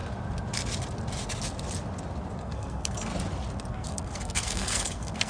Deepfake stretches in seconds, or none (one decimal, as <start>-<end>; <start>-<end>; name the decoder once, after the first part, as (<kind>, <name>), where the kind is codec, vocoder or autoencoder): 2.4-3.1 (codec, SNAC); 3.7-5.3